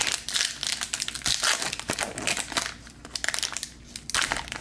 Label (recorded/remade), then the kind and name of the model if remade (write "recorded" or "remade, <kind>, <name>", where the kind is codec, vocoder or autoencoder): recorded